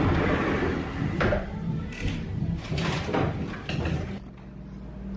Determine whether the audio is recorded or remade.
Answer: remade